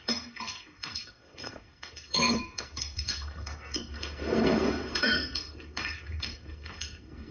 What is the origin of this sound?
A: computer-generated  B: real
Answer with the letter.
A